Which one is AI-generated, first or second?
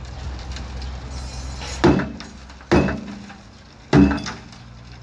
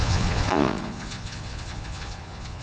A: second